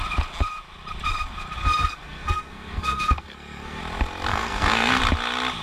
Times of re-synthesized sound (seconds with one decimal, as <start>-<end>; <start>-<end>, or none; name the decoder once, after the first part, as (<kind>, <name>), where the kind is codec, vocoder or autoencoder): 1.6-3.8 (codec, SNAC); 4.3-5.0